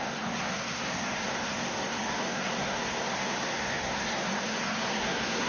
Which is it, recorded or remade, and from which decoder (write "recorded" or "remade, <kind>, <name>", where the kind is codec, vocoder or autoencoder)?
remade, codec, SNAC